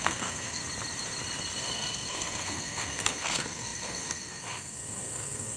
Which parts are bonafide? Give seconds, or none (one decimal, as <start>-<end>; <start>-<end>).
0.6-1.6